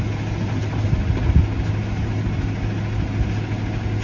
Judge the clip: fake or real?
real